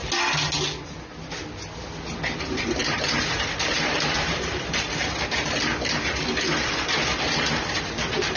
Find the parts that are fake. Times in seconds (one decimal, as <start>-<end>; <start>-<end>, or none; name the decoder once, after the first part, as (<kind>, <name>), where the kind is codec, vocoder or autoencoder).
2.4-8.4 (vocoder, BigVGAN v2)